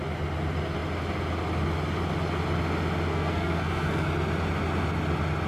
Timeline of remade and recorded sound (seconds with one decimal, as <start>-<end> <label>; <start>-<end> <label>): 0.0-3.1 recorded; 3.1-4.1 remade; 4.1-5.5 recorded